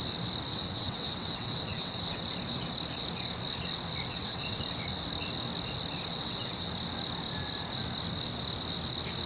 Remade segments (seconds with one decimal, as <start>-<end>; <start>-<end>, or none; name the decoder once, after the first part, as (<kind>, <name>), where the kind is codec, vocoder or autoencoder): 0.5-2.2 (vocoder, WaveNeXt); 4.1-4.6; 6.1-6.7